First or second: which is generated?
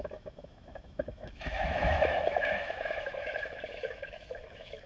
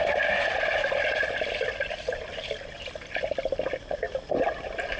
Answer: first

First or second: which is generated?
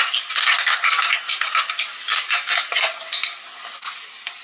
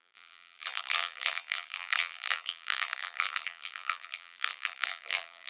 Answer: second